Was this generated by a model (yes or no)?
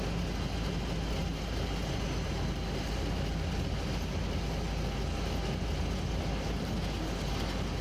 no